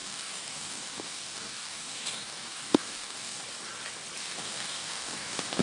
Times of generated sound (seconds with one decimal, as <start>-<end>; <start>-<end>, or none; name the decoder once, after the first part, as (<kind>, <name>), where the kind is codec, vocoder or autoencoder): 0.0-3.4 (codec, DAC); 4.2-5.6